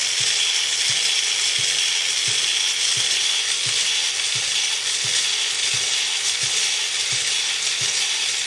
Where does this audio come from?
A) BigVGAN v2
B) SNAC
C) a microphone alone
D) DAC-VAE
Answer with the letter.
C